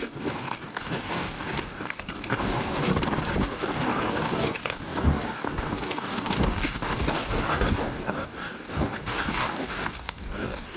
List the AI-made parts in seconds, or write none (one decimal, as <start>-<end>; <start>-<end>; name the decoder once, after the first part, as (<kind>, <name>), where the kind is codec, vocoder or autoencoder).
0.0-2.9 (codec, DAC); 3.4-10.8